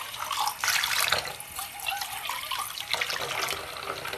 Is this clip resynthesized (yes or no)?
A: no